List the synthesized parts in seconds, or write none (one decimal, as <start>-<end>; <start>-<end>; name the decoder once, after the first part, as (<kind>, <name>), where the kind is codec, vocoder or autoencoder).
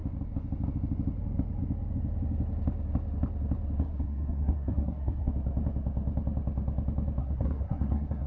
3.8-5.3 (codec, SNAC); 7.2-8.3